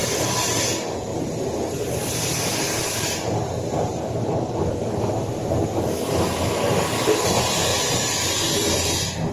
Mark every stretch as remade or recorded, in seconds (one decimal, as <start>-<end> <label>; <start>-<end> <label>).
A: 0.0-0.6 remade; 0.6-1.1 recorded; 1.1-5.1 remade; 5.1-9.3 recorded